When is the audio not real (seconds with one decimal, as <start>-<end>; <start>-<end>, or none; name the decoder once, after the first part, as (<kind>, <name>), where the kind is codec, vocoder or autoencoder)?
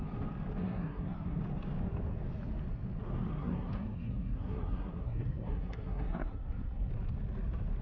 0.6-1.4 (codec, SNAC); 3.3-6.9